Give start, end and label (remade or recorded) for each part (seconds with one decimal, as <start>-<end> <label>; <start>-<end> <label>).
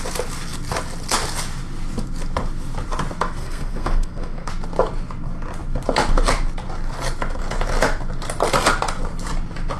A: 0.0-3.4 recorded; 3.4-4.5 remade; 4.5-9.8 recorded